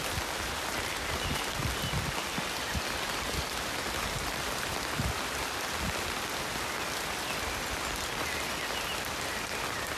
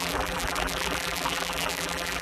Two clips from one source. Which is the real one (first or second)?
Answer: first